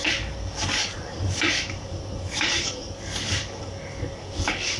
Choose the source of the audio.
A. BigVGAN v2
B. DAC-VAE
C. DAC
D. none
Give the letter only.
C